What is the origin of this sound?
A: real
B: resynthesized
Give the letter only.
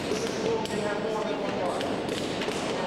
A